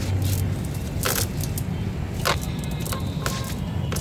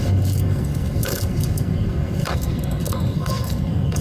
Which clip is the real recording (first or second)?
first